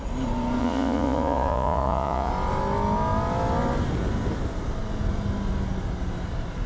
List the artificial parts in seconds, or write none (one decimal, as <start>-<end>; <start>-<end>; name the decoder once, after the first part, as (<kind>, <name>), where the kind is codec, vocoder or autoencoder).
0.6-2.3 (vocoder, Vocos)